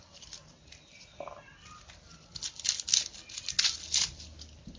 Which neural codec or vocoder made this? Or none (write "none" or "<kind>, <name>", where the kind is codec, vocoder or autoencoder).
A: none